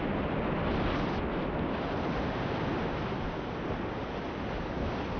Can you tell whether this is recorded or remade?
recorded